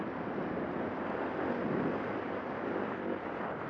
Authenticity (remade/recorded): recorded